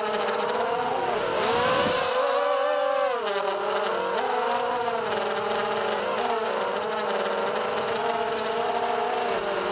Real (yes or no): yes